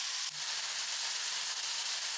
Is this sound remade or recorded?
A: recorded